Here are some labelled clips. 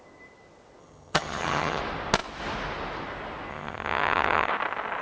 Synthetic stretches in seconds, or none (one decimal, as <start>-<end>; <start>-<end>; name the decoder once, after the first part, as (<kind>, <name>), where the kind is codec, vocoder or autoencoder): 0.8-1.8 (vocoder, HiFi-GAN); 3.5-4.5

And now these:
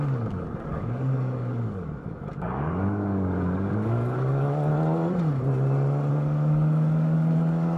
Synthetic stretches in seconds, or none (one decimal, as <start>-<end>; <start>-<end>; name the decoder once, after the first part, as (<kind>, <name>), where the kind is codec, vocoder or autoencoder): 0.0-4.7 (codec, DAC); 6.1-7.8

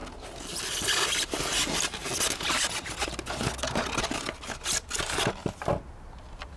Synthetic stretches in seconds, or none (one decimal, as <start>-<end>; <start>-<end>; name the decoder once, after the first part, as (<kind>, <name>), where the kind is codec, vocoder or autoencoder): none

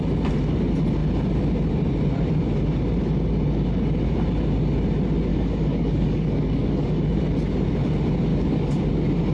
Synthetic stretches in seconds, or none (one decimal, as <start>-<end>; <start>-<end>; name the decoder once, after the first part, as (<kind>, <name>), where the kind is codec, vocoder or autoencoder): 5.3-7.2 (codec, DAC); 8.3-8.9